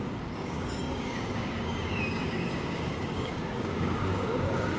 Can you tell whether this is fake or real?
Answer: fake